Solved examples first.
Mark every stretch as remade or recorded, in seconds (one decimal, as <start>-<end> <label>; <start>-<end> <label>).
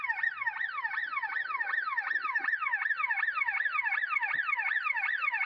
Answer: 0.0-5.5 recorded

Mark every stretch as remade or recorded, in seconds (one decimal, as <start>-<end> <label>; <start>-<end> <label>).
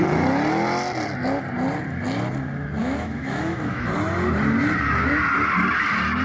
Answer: 0.0-2.8 recorded; 2.8-3.9 remade; 3.9-6.2 recorded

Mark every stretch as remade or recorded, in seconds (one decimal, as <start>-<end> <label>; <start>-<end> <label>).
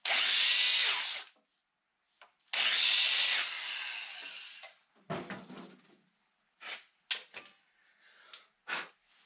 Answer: 0.0-9.3 recorded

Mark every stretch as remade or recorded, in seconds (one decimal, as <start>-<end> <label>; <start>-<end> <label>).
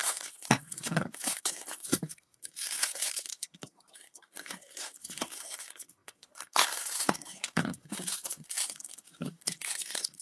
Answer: 0.0-10.2 remade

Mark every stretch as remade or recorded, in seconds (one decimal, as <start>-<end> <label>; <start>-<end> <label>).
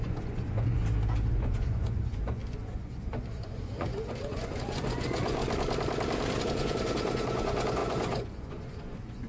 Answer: 0.0-0.8 remade; 0.8-1.3 recorded; 1.3-5.4 remade; 5.4-6.4 recorded; 6.4-9.3 remade